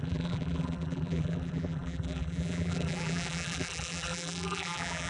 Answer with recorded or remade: remade